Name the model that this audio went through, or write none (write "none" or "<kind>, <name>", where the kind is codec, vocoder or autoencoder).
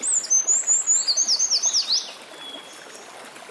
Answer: none